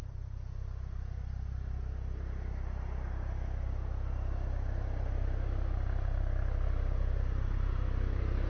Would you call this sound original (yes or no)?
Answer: no